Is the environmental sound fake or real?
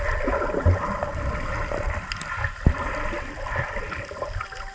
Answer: real